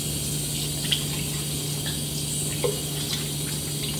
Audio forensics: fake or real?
real